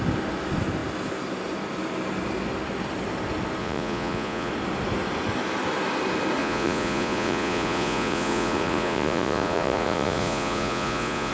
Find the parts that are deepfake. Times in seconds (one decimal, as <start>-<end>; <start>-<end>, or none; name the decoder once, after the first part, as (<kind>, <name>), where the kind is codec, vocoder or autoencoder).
3.6-4.5 (vocoder, Vocos); 6.4-11.3

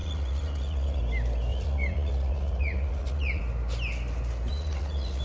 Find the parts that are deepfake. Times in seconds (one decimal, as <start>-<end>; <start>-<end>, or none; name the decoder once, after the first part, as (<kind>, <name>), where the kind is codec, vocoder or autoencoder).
0.0-1.0 (vocoder, Vocos); 1.5-3.4; 4.5-5.2

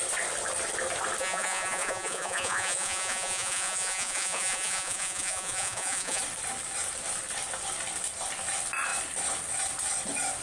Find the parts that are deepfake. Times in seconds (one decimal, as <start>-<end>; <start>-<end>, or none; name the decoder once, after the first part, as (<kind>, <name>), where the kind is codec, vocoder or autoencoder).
1.2-6.2 (vocoder, Vocos)